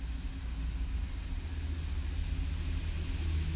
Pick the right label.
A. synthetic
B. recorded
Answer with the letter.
B